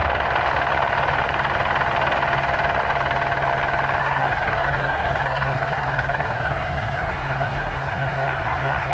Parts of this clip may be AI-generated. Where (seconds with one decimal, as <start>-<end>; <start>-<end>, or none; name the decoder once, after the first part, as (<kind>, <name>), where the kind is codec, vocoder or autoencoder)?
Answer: 4.0-8.9 (codec, SNAC)